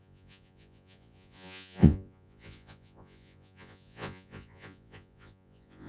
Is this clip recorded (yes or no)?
no